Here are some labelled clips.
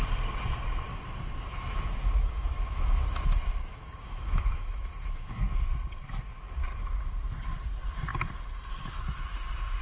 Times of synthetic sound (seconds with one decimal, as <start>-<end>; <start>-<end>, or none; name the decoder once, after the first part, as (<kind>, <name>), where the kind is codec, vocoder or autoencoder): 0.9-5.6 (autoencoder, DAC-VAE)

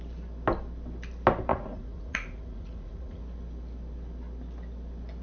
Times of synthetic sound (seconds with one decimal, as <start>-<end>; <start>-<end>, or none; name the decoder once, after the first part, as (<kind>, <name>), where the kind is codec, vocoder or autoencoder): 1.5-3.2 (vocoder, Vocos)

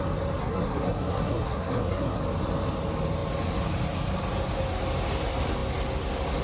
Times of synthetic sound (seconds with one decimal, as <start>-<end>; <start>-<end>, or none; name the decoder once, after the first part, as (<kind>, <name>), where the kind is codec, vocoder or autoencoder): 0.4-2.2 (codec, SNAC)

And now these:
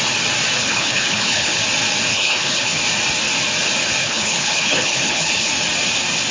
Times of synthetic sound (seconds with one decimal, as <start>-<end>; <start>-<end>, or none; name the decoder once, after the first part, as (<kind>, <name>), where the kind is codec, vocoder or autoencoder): 0.6-1.6 (codec, HILCodec); 2.1-2.8; 4.0-5.5

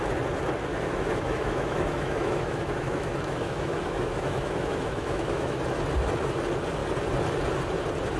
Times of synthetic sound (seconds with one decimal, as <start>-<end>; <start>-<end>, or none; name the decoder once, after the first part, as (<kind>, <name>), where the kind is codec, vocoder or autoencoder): 0.7-5.6 (autoencoder, DAC-VAE)